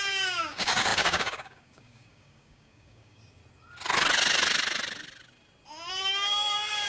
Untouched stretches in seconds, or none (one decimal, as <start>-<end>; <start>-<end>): 3.4-5.9